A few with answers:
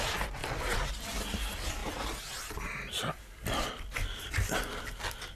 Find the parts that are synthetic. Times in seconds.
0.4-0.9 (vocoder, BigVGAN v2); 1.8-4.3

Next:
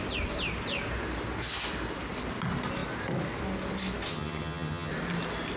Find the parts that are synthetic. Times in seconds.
4.1-4.9 (vocoder, HiFi-GAN)

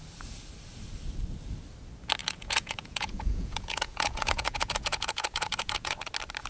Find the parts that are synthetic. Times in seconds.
2.2-6.1 (vocoder, Vocos)

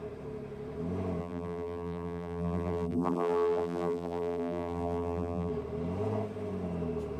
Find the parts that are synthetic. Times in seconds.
1.2-5.5 (vocoder, BigVGAN v2)

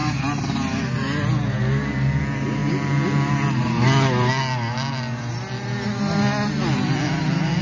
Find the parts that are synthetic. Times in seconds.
none

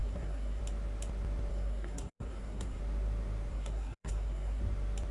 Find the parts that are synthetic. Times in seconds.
0.0-0.6 (codec, SNAC); 1.5-2.8; 3.5-4.6

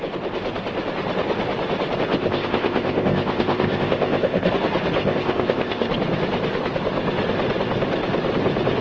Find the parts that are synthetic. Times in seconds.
2.1-4.5 (codec, ZipCodec); 5.0-5.9